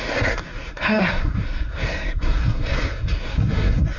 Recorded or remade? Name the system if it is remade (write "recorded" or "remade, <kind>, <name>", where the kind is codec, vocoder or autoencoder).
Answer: remade, codec, SNAC